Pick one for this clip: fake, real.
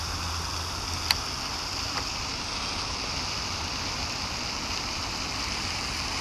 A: real